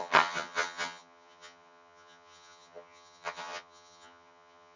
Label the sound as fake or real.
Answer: fake